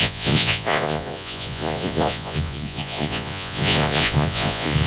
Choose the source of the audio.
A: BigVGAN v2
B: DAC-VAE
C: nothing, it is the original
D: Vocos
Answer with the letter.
D